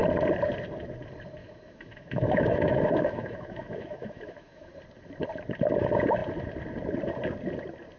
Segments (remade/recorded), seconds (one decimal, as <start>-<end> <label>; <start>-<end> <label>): 0.0-1.4 recorded; 1.4-4.7 remade; 4.7-8.0 recorded